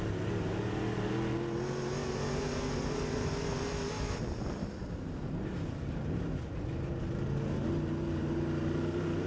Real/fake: real